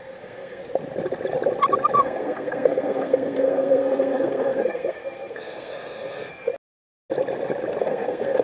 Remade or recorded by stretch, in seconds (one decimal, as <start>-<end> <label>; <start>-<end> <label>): 0.0-0.6 remade; 0.6-2.0 recorded; 2.0-6.5 remade; 6.5-7.8 recorded; 7.8-8.4 remade